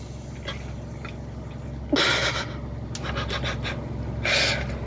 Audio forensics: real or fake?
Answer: real